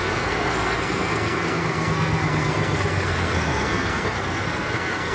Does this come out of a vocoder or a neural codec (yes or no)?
yes